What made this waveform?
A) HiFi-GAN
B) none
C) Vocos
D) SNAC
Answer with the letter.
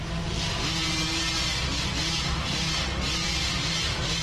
B